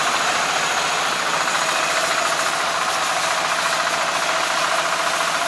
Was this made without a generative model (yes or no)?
yes